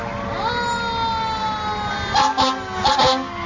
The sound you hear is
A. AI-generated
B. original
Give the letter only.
B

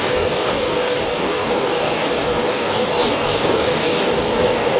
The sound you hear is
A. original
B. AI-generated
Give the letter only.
B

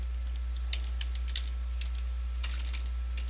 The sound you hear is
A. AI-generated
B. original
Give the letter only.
B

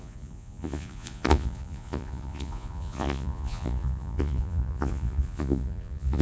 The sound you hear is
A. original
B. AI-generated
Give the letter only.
B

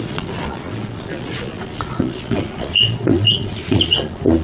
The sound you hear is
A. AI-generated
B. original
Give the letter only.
A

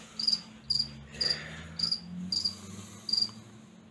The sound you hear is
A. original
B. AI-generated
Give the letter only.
A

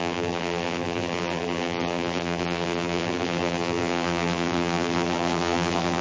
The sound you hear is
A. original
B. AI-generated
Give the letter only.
B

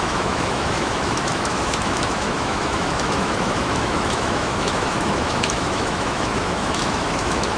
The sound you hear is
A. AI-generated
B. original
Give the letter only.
A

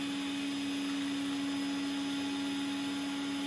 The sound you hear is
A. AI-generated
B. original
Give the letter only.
B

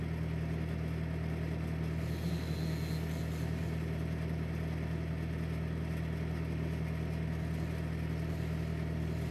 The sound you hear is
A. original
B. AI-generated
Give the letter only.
A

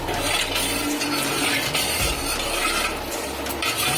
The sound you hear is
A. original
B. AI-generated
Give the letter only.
A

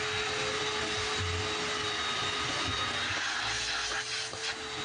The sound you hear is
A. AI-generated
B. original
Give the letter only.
B